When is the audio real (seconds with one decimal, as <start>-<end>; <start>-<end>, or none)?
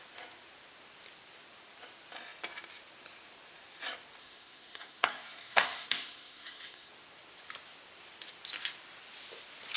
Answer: 0.0-4.2; 6.9-9.8